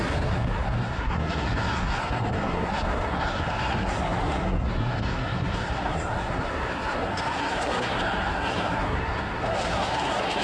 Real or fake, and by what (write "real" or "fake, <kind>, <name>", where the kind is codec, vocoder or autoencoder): fake, codec, SNAC